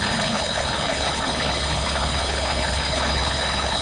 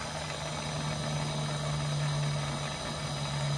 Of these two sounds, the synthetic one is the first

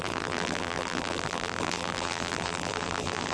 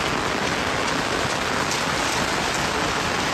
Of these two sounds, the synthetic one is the first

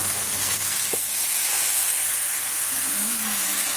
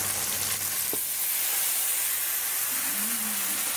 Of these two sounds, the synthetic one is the first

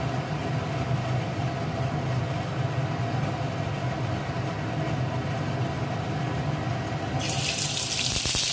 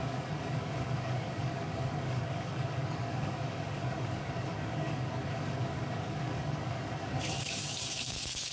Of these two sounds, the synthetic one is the second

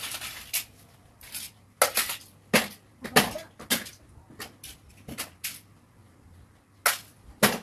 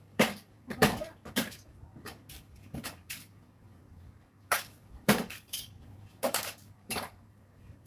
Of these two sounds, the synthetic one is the second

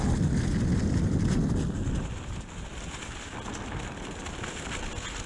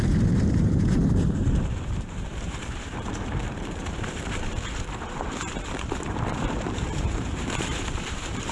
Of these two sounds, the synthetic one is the second